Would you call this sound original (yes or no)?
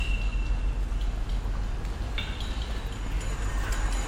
yes